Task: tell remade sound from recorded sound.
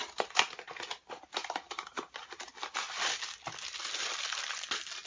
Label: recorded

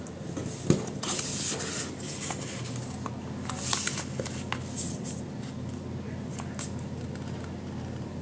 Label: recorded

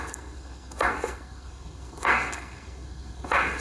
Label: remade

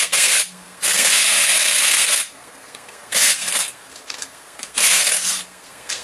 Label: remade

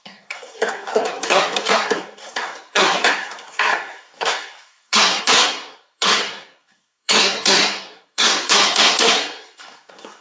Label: remade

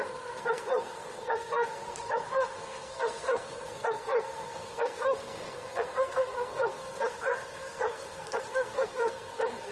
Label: remade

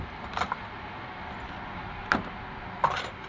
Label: recorded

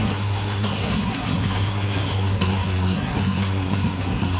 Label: remade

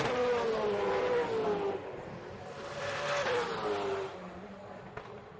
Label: recorded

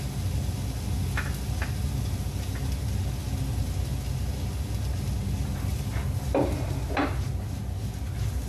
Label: recorded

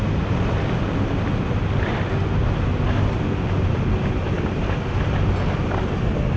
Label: recorded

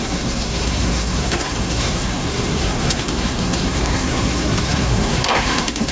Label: remade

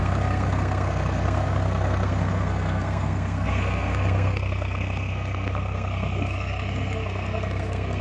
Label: remade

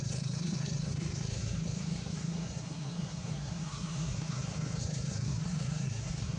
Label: remade